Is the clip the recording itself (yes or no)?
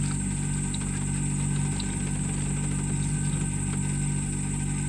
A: yes